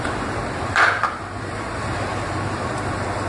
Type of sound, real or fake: fake